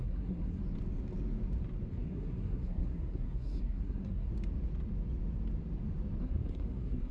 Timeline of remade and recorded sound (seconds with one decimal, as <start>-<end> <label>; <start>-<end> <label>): 0.0-0.6 remade; 0.6-1.9 recorded; 1.9-4.3 remade; 4.3-6.2 recorded; 6.2-7.1 remade